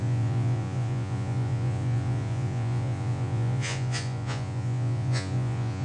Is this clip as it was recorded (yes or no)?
no